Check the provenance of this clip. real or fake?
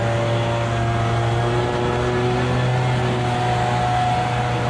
real